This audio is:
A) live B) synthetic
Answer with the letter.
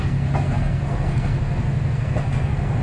B